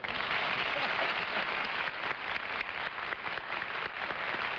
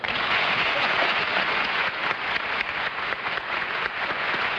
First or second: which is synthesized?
second